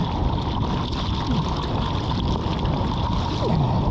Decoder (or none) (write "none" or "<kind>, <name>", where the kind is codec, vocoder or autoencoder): none